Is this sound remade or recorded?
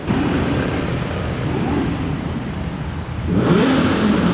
remade